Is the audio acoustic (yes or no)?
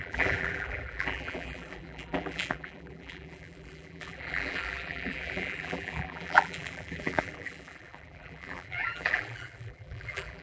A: no